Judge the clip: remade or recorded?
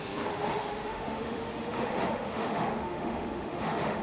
remade